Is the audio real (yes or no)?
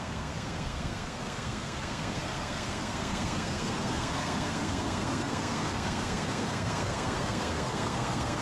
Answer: no